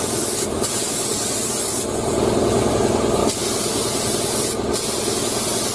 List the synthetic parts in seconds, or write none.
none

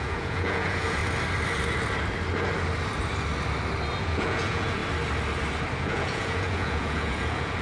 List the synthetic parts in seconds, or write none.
0.0-1.0 (vocoder, Vocos); 4.0-4.8; 5.8-7.6

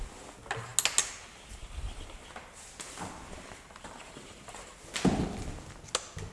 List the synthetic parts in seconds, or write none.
none

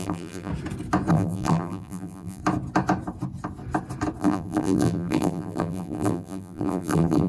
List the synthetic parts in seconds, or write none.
0.0-0.5 (vocoder, BigVGAN v2); 1.1-2.4; 4.2-7.3

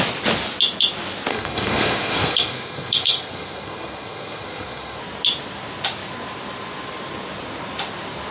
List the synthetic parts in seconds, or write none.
1.3-5.0 (codec, SNAC)